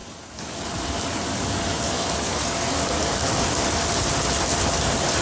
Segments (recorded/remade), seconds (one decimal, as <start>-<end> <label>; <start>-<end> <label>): 0.0-0.6 remade; 0.6-1.3 recorded; 1.3-3.9 remade; 3.9-5.2 recorded